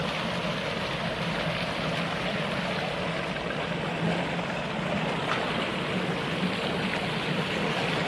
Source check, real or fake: real